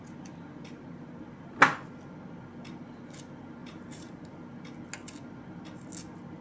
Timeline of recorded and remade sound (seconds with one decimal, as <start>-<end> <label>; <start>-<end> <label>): 0.0-3.6 recorded; 3.6-4.2 remade; 4.2-6.4 recorded